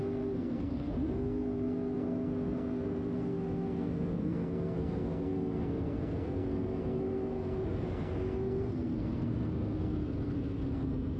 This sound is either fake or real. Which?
fake